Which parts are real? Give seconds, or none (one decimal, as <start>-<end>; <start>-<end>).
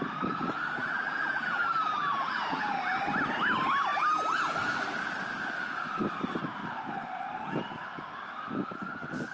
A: 0.0-0.8; 2.8-9.3